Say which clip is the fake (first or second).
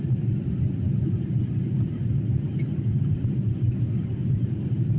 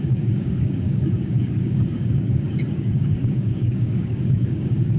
second